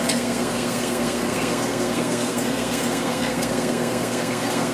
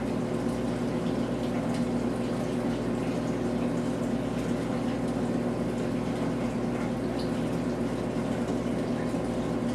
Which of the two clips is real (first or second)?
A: second